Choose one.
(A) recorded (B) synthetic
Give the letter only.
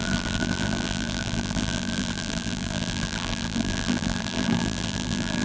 B